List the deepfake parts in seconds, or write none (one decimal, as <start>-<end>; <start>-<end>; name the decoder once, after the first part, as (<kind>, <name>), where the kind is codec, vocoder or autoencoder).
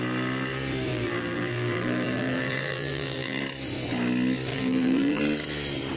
0.9-3.4 (vocoder, BigVGAN v2); 4.5-5.2